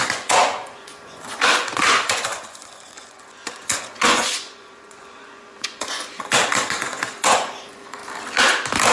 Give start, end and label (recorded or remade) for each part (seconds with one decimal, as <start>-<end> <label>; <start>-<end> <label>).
0.0-8.0 remade; 8.0-8.9 recorded

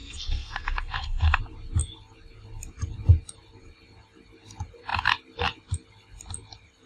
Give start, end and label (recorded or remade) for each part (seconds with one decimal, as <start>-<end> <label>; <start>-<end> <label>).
0.0-1.4 remade; 1.4-6.9 recorded

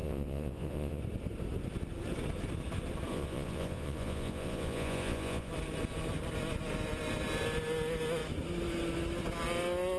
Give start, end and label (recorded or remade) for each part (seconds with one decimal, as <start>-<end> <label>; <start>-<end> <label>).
0.0-1.0 remade; 1.0-3.1 recorded; 3.1-5.5 remade; 5.5-10.0 recorded

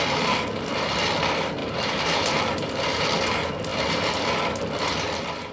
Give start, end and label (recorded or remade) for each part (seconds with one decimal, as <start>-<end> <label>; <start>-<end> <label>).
0.0-1.6 recorded; 1.6-3.0 remade; 3.0-5.5 recorded

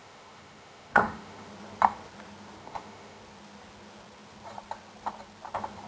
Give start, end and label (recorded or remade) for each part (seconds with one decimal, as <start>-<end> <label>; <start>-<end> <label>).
0.0-1.5 remade; 1.5-2.6 recorded; 2.6-3.2 remade; 3.2-5.9 recorded

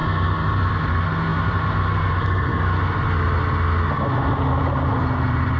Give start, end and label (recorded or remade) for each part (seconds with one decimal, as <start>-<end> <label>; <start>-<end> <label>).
0.0-0.8 recorded; 0.8-2.5 remade; 2.5-4.6 recorded; 4.6-5.6 remade

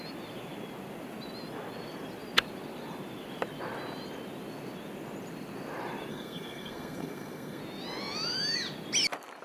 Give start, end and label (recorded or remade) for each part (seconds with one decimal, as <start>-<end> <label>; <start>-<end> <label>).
0.0-6.1 recorded; 6.1-7.6 remade; 7.6-9.4 recorded

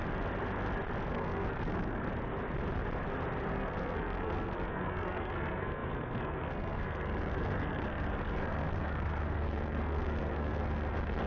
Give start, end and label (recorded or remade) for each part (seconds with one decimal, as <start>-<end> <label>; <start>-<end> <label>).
0.0-1.1 recorded; 1.1-2.1 remade; 2.1-3.5 recorded; 3.5-11.3 remade